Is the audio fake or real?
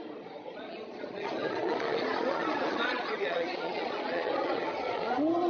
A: fake